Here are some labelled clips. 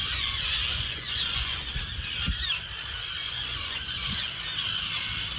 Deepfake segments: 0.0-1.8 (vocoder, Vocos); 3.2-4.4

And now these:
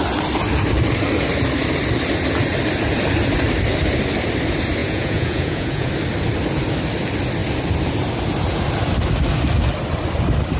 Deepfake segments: 4.8-5.9 (vocoder, Vocos)

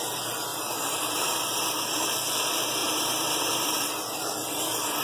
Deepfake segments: 0.5-1.4 (vocoder, BigVGAN v2); 2.8-3.9

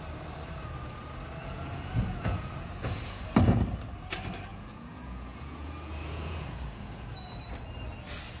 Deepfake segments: 1.4-3.2 (vocoder, Vocos); 4.5-7.1

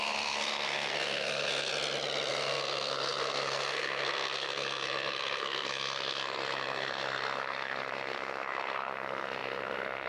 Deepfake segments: 0.0-1.7 (codec, SNAC); 2.3-10.1

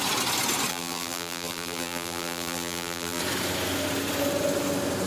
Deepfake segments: 0.7-3.2 (vocoder, BigVGAN v2)